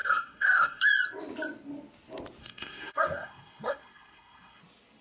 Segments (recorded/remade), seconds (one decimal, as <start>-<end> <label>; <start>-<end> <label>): 0.0-0.8 remade; 0.8-2.4 recorded; 2.4-4.6 remade; 4.6-5.0 recorded